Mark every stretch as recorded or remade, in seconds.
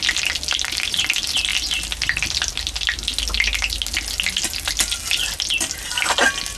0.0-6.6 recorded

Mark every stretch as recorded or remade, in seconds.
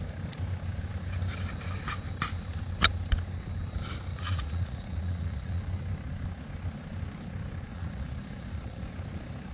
0.0-4.1 recorded; 4.1-5.6 remade; 5.6-7.7 recorded; 7.7-8.9 remade; 8.9-9.5 recorded